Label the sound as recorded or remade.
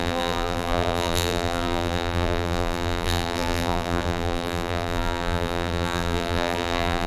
remade